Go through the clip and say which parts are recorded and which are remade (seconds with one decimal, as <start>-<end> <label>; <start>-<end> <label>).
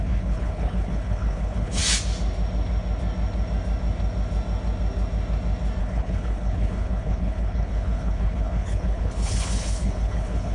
0.0-1.8 remade; 1.8-5.8 recorded; 5.8-10.5 remade